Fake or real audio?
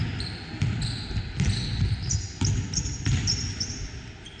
real